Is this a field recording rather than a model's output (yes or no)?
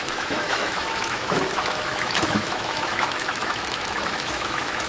no